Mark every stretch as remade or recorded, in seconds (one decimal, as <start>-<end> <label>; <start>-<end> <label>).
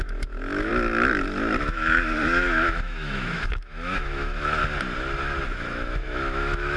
0.0-0.7 remade; 0.7-1.6 recorded; 1.6-4.6 remade; 4.6-5.4 recorded; 5.4-6.8 remade